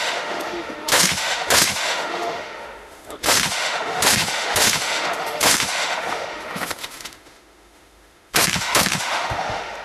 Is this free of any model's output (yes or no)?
no